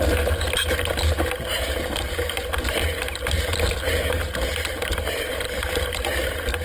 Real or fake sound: real